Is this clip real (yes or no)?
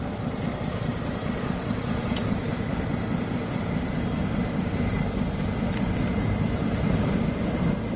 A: yes